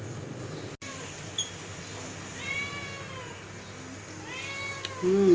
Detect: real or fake real